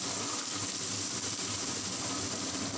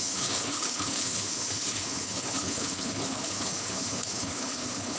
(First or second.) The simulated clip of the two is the second